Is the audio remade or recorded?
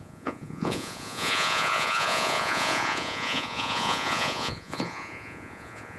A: remade